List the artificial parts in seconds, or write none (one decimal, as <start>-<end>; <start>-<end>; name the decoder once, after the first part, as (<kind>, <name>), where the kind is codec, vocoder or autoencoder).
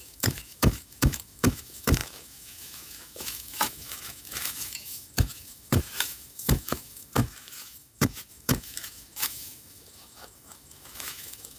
0.0-11.6 (autoencoder, DAC-VAE)